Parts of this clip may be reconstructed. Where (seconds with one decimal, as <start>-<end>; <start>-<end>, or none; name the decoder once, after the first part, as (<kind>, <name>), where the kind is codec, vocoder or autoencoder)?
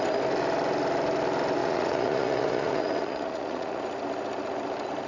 1.6-3.8 (vocoder, Vocos)